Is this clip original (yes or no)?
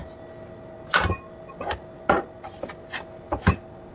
yes